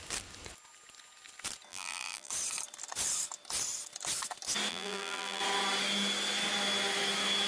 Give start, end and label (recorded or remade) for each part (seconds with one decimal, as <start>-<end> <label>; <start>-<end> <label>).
0.0-1.7 recorded; 1.7-2.3 remade; 2.3-4.7 recorded; 4.7-5.4 remade; 5.4-7.5 recorded